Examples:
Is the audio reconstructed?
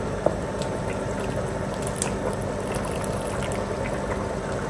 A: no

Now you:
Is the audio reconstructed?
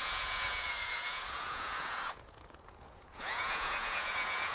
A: yes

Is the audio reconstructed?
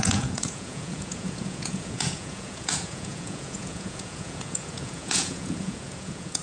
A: yes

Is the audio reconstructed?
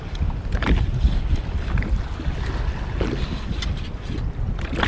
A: no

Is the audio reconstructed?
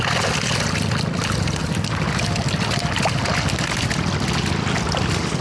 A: no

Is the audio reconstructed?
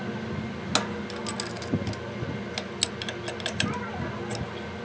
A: no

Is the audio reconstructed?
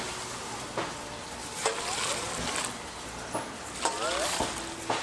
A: no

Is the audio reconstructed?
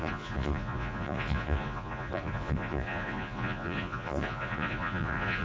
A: yes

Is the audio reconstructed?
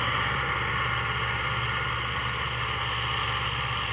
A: no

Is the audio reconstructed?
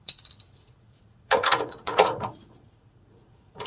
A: yes